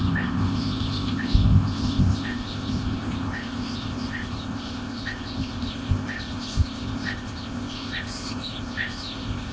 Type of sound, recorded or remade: remade